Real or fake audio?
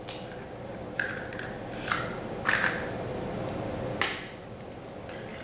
real